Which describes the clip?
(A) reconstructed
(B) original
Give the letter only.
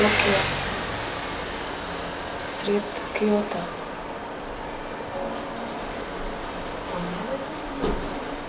B